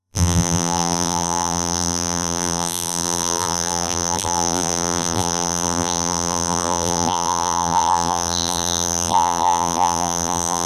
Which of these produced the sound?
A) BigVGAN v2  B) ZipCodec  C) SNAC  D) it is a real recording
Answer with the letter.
A